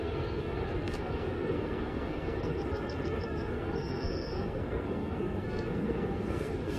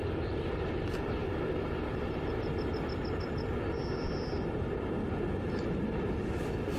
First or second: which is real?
second